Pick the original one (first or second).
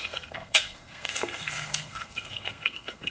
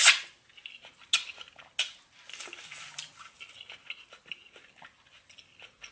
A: second